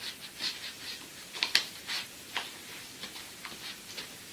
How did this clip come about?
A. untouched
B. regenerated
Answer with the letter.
A